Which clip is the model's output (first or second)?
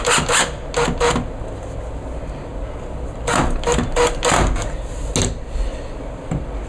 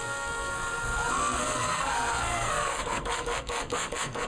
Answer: second